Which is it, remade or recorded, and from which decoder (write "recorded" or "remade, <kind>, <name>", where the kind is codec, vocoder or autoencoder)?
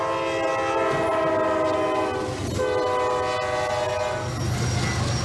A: recorded